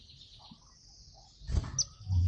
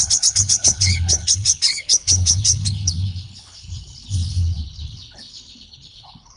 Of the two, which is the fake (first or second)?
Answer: second